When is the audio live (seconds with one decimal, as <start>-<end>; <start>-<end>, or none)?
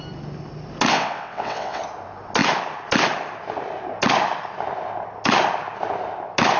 0.0-0.9; 1.8-6.6